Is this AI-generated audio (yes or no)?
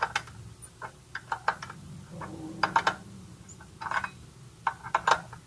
no